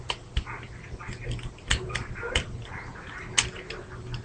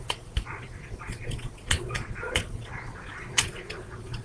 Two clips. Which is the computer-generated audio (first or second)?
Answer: second